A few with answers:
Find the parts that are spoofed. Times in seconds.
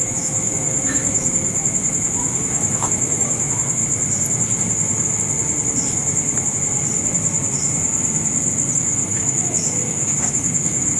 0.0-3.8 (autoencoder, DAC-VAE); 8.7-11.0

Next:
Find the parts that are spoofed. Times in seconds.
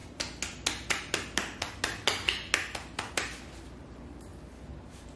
3.1-4.3 (vocoder, BigVGAN v2)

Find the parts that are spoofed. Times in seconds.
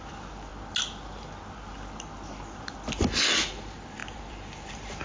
0.0-0.5 (vocoder, BigVGAN v2); 3.5-5.0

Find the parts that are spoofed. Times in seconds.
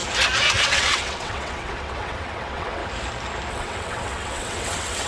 0.6-2.8 (vocoder, WaveNeXt); 3.5-5.1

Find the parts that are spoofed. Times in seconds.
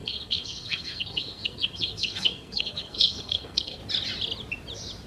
0.0-3.8 (codec, SNAC)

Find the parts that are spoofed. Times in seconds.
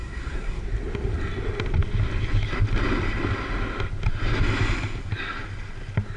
0.0-0.6 (codec, SNAC)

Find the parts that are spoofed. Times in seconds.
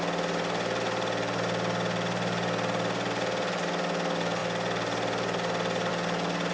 none